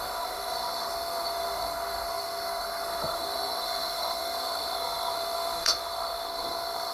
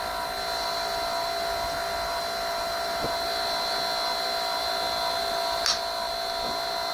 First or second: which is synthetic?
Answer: first